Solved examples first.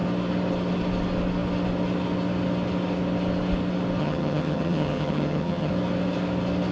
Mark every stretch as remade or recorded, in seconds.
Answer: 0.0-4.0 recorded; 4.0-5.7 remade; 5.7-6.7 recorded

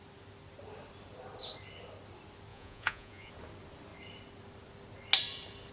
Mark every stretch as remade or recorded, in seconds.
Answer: 0.0-2.5 recorded; 2.5-3.3 remade; 3.3-5.7 recorded

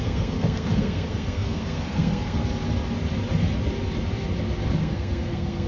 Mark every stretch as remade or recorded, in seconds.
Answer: 0.0-2.4 remade; 2.4-4.8 recorded; 4.8-5.7 remade